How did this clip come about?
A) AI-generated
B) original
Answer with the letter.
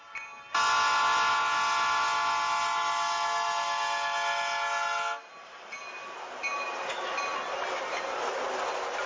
B